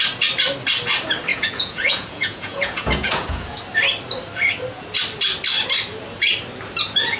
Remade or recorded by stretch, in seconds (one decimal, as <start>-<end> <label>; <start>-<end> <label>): 0.0-1.3 recorded; 1.3-3.6 remade; 3.6-7.2 recorded